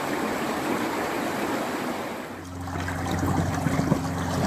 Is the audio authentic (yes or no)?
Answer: yes